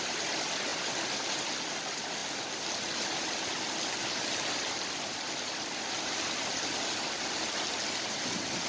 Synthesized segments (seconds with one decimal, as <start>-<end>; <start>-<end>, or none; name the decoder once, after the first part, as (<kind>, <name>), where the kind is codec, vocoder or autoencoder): none